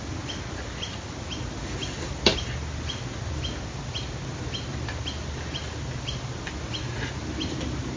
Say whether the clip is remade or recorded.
recorded